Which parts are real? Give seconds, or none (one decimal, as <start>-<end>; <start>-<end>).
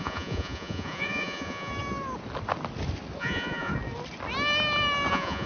1.7-3.2; 3.7-5.1